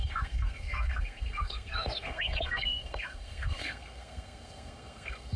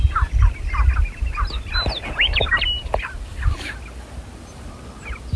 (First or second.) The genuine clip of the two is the second